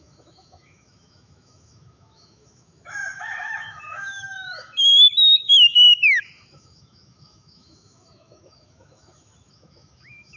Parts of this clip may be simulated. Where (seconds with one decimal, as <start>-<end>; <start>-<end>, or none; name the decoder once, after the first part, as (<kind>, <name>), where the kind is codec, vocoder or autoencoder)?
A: 0.0-10.4 (autoencoder, DAC-VAE)